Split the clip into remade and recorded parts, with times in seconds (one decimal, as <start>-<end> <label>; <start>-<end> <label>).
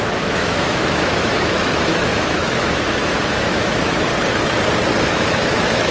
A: 0.0-4.1 remade; 4.1-5.0 recorded; 5.0-5.9 remade